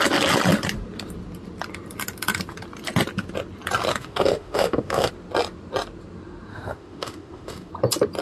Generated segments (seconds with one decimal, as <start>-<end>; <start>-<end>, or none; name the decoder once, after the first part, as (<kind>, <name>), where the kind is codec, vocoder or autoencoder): 3.9-5.1 (autoencoder, DAC-VAE); 6.5-7.7